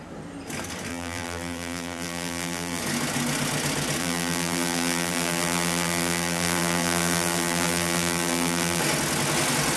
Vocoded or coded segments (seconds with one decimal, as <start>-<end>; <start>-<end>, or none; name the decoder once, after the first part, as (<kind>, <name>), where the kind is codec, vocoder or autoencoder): 0.9-2.8 (vocoder, BigVGAN v2); 4.0-8.8